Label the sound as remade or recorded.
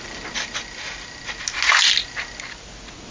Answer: recorded